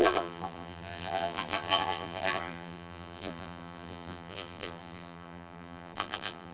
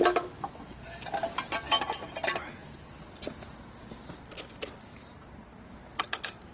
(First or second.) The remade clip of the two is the first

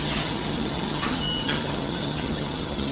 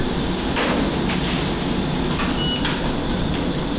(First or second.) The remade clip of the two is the first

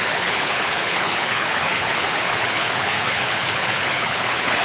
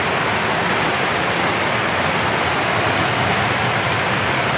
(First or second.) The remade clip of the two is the first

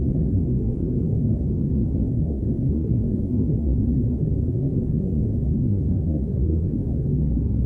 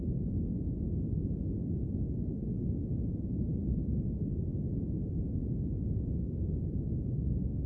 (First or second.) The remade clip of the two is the first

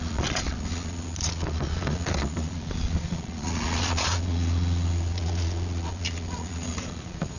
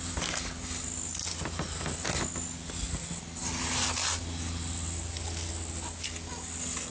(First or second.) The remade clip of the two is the first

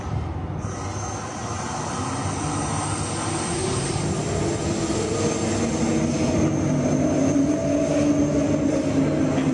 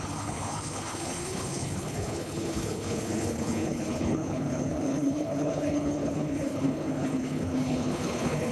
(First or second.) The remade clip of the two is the second